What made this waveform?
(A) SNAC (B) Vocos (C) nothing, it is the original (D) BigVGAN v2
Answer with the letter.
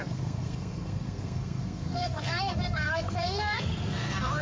A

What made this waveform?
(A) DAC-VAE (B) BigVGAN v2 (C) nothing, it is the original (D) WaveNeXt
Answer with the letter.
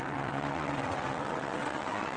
D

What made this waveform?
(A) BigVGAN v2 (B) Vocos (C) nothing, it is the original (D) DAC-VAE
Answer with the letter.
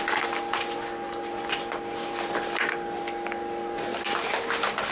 C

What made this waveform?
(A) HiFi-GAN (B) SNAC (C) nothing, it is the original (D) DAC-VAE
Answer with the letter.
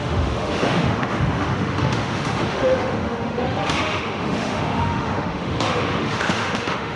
D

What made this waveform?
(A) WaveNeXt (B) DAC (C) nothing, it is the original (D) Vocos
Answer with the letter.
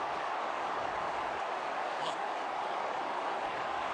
B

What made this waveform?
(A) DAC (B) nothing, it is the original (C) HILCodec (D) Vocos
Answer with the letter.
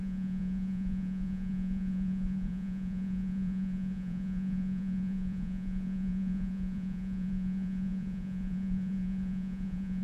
D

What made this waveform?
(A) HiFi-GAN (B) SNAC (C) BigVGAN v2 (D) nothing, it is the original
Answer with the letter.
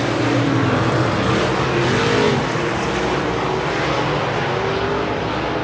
D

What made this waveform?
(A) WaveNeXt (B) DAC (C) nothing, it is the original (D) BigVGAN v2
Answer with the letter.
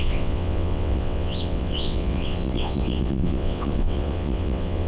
A